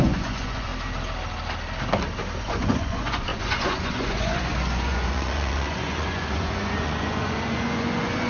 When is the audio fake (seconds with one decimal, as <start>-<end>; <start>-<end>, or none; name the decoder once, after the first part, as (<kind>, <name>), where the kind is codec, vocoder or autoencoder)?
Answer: 0.0-0.7 (vocoder, Vocos); 2.4-8.3